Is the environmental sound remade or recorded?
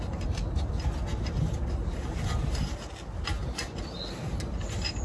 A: recorded